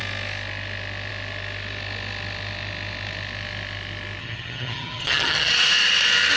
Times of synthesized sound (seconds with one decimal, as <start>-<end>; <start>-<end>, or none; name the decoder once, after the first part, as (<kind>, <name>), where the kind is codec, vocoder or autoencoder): 4.2-5.5 (vocoder, HiFi-GAN)

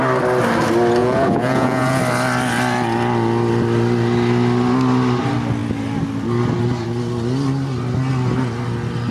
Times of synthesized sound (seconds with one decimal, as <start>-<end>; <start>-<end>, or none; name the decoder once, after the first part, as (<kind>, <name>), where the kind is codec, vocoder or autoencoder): 1.0-2.0 (vocoder, Vocos)

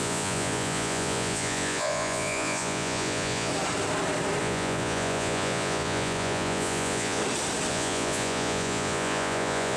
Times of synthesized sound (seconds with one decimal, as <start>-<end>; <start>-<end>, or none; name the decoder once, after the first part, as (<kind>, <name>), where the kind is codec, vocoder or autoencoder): 0.0-3.5 (vocoder, Vocos); 4.4-7.2; 7.7-9.8

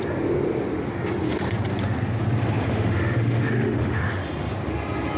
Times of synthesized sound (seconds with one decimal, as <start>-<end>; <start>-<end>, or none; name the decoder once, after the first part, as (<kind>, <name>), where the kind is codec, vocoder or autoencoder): 2.6-4.2 (autoencoder, DAC-VAE)

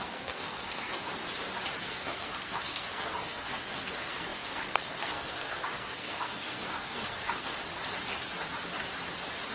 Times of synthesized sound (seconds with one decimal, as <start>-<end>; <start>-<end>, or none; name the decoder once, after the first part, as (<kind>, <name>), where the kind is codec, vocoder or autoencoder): 0.0-1.2 (codec, SNAC); 1.8-7.6

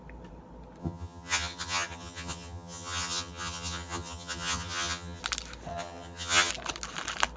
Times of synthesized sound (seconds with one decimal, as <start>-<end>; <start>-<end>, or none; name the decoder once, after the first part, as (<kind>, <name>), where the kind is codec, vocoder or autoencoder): 0.8-5.2 (vocoder, HiFi-GAN); 5.7-6.5